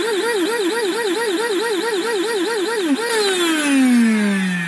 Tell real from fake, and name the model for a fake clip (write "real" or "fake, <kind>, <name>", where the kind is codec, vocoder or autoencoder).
real